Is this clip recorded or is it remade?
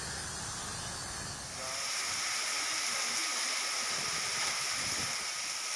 recorded